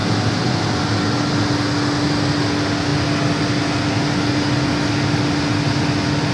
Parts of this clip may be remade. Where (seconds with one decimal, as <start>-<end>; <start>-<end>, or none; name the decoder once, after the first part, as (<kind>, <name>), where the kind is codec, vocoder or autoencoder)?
none